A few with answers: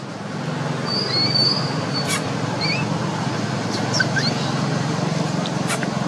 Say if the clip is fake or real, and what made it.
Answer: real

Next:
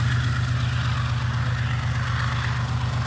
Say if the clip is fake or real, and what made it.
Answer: real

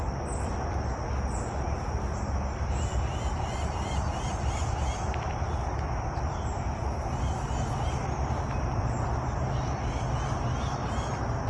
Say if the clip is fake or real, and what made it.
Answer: real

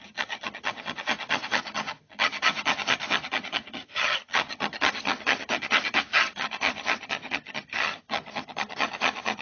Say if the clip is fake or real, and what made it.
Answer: fake, vocoder, HiFi-GAN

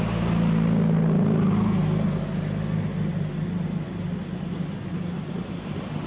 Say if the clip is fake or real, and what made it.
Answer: real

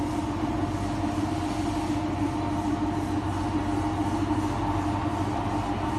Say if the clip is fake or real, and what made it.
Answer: real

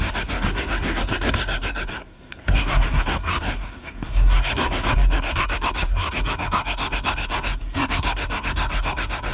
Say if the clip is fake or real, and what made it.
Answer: fake, codec, SNAC